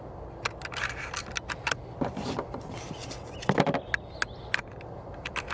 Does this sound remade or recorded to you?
recorded